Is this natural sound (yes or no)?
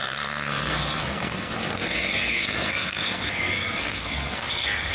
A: no